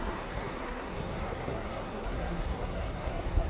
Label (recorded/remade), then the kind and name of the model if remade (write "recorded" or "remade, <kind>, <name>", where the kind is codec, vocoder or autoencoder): remade, codec, SNAC